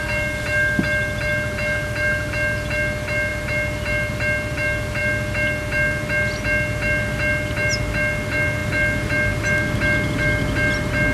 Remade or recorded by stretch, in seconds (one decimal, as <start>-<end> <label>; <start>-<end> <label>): 0.0-11.1 recorded